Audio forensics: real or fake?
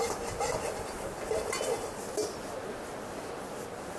real